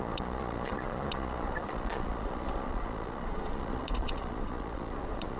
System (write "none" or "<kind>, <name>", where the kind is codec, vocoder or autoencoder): vocoder, Vocos